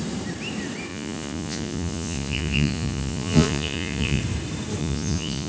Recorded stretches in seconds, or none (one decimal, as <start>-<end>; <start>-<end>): 0.0-0.9; 4.2-4.8